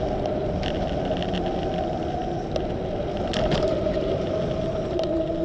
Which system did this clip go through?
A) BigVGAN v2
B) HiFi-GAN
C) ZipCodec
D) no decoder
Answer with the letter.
D